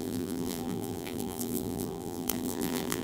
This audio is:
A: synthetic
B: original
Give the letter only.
A